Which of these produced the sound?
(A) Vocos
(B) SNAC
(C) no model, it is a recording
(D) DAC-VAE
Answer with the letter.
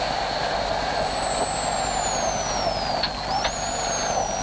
C